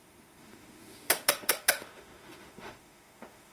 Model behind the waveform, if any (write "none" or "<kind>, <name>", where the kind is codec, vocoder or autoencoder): autoencoder, DAC-VAE